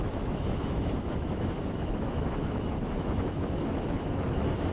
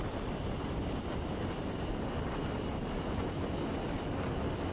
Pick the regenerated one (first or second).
first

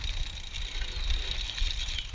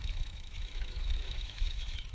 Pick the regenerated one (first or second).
second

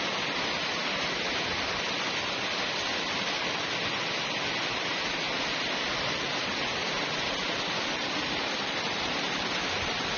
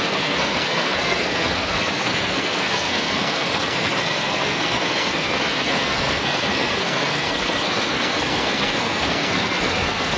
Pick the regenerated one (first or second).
second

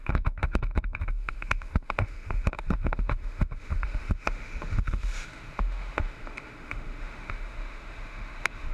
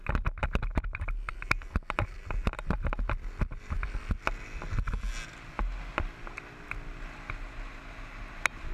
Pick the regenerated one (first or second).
first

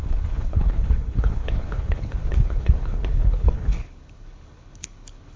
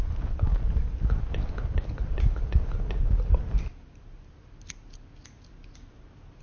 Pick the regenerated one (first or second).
first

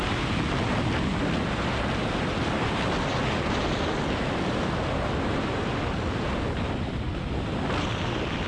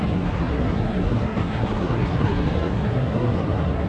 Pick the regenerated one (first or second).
second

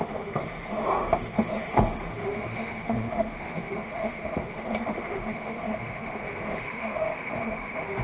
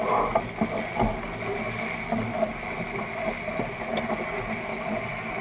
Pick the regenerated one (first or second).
first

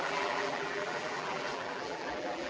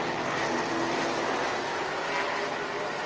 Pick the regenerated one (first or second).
first